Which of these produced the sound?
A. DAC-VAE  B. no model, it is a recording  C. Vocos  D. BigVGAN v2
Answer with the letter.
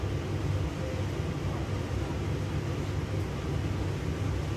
B